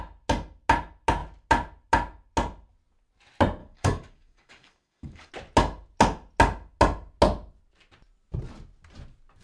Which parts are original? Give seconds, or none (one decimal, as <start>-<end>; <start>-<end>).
0.0-3.6; 5.3-9.4